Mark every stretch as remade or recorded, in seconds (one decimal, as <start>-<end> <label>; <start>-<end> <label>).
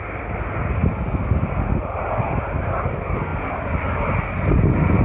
0.0-5.0 recorded